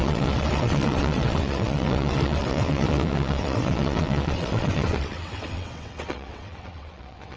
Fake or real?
fake